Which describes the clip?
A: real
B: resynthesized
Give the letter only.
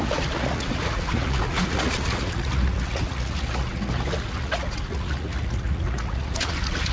B